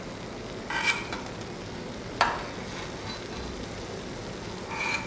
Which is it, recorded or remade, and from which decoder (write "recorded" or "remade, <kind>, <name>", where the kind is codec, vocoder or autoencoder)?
recorded